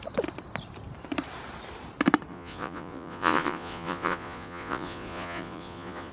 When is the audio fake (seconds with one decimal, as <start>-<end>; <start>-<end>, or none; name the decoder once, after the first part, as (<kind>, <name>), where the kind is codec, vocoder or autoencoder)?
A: 2.3-6.1 (vocoder, Vocos)